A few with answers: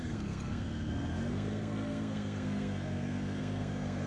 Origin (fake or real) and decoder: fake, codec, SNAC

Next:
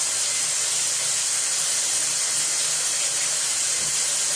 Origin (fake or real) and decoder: real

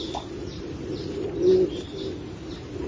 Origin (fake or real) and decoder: real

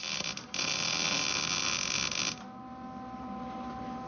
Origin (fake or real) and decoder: real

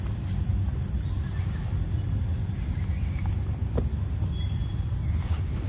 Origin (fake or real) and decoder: real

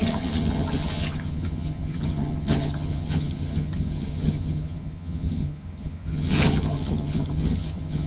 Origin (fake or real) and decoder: fake, vocoder, HiFi-GAN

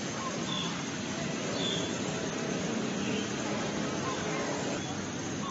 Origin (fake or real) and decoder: real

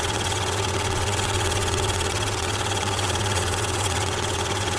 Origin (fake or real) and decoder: fake, vocoder, WaveNeXt